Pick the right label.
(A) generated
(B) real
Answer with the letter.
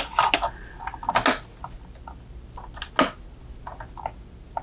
B